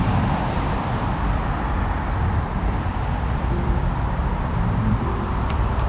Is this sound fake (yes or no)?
yes